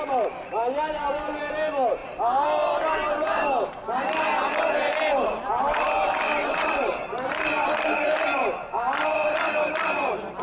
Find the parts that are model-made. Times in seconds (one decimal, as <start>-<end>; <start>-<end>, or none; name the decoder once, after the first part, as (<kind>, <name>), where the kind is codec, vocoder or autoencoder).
6.4-7.0 (vocoder, WaveNeXt)